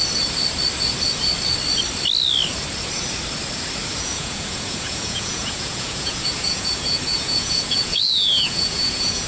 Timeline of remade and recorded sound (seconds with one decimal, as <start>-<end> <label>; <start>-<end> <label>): 0.0-4.0 recorded; 4.0-9.3 remade